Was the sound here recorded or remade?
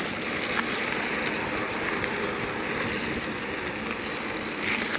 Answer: recorded